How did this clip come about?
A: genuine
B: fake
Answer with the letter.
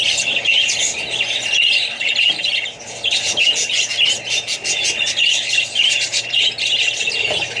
A